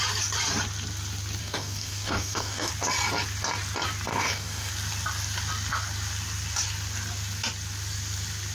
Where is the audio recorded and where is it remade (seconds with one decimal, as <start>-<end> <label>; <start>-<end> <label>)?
0.0-1.4 recorded; 1.4-2.7 remade; 2.7-4.1 recorded; 4.1-4.7 remade; 4.7-8.5 recorded